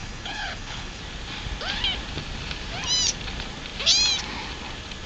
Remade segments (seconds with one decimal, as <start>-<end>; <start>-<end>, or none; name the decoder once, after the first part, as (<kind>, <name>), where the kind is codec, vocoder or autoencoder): 0.0-1.0 (codec, HILCodec)